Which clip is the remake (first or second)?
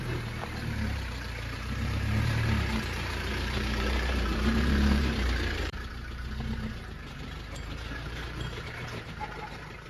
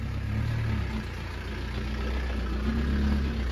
first